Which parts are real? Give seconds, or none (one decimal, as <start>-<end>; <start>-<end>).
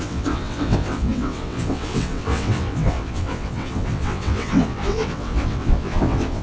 none